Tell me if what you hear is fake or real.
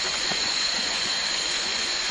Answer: fake